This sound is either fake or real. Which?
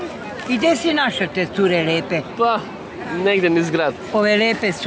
real